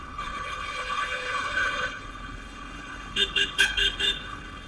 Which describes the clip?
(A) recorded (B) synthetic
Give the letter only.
B